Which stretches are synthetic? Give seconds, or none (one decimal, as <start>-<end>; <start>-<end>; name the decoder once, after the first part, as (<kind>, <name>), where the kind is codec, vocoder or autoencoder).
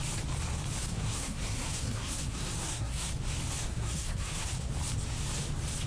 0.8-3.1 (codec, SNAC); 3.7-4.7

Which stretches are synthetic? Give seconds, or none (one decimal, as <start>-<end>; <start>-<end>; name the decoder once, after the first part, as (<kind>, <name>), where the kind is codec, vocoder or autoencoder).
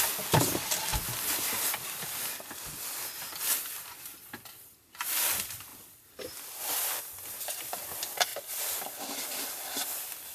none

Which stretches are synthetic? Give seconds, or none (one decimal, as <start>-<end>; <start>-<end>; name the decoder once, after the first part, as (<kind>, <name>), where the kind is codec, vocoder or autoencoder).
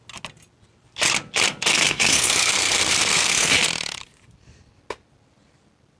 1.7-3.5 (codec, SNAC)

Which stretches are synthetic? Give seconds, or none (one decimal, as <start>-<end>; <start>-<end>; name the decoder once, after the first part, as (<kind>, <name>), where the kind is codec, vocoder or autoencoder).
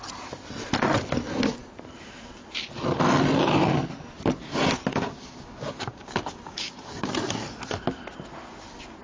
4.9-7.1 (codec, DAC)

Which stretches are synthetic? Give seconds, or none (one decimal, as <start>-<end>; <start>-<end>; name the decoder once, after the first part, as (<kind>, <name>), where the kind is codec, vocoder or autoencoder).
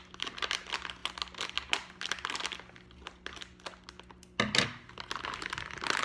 none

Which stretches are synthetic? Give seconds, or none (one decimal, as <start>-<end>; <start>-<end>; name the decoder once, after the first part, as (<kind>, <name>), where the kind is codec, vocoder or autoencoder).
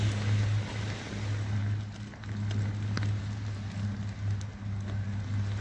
none